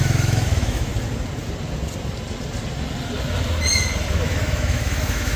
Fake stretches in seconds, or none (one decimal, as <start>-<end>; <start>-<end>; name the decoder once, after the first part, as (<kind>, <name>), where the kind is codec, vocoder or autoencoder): 0.0-0.9 (autoencoder, DAC-VAE); 4.1-5.4